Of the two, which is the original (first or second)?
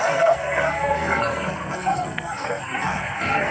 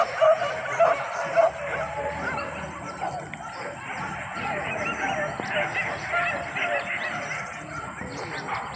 second